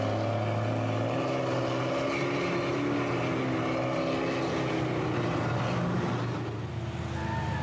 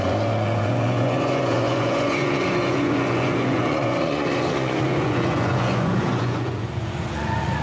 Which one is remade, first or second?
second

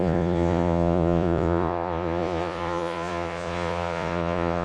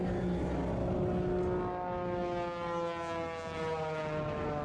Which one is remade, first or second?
first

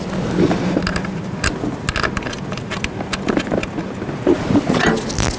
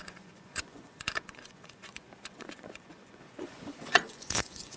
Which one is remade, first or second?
second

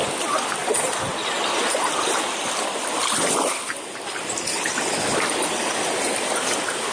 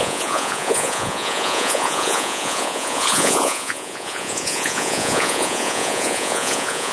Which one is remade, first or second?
second